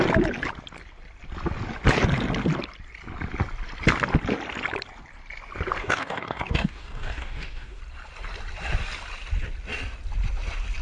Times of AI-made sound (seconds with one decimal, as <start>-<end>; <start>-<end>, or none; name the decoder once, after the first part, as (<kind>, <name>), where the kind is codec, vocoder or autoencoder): 5.8-7.8 (codec, DAC)